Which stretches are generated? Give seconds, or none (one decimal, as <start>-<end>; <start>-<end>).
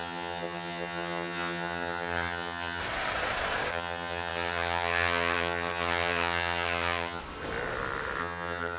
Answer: 0.0-2.8; 3.7-7.2; 8.2-8.8